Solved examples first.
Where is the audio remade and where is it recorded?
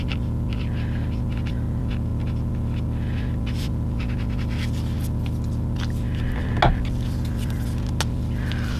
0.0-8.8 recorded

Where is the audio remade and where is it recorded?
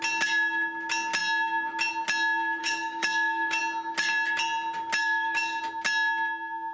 0.0-2.6 recorded; 2.6-3.6 remade; 3.6-5.0 recorded; 5.0-5.6 remade; 5.6-6.7 recorded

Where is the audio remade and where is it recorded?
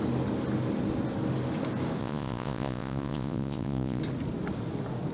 0.0-2.0 recorded; 2.0-4.0 remade; 4.0-5.1 recorded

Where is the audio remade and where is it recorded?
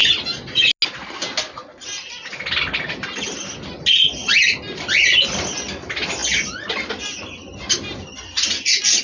0.0-0.7 remade; 0.7-4.2 recorded; 4.2-5.1 remade; 5.1-9.0 recorded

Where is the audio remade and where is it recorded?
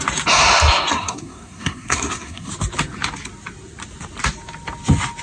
0.0-0.9 recorded; 0.9-2.5 remade; 2.5-5.2 recorded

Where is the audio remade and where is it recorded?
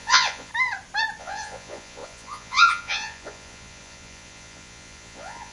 0.0-0.5 remade; 0.5-1.2 recorded; 1.2-5.5 remade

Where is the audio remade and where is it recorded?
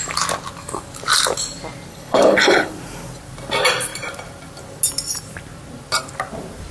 0.0-1.9 recorded; 1.9-2.7 remade; 2.7-6.7 recorded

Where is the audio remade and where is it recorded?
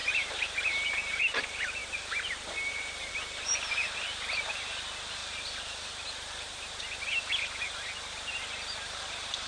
0.0-9.5 recorded